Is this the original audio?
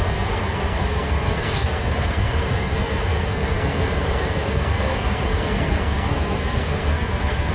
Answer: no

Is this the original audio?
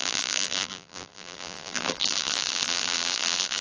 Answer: no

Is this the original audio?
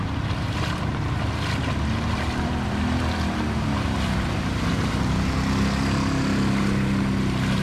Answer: yes